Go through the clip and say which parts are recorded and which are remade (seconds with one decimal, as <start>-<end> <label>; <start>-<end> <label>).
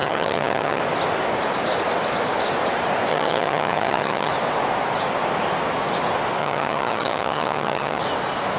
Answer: 0.0-0.8 remade; 0.8-3.1 recorded; 3.1-4.3 remade; 4.3-6.4 recorded; 6.4-8.0 remade; 8.0-8.6 recorded